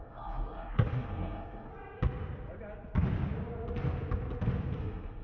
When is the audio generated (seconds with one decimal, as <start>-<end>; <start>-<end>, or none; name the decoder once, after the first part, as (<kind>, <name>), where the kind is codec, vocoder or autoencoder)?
0.0-1.7 (codec, SNAC); 4.8-5.2